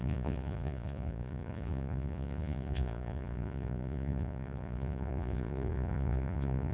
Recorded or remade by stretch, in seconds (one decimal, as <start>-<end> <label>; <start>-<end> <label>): 0.0-6.7 remade